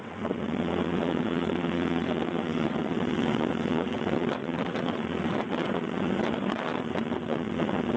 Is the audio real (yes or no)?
no